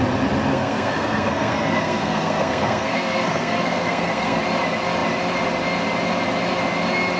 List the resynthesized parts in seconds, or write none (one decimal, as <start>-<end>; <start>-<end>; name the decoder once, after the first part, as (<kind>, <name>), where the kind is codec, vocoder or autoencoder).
0.5-4.4 (codec, SNAC)